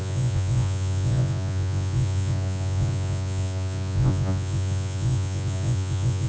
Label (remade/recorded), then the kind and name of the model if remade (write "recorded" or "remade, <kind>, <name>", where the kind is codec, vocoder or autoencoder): remade, vocoder, Vocos